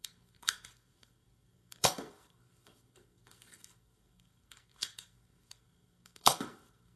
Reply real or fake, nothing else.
fake